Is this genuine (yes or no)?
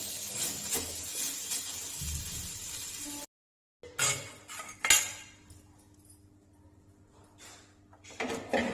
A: yes